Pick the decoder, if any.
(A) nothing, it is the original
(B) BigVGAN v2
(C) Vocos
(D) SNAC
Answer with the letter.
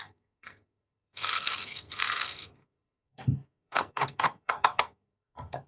D